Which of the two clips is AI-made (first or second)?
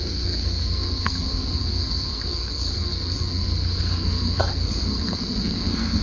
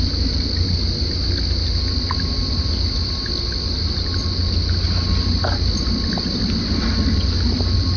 first